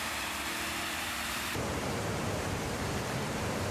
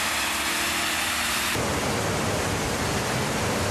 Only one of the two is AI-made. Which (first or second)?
first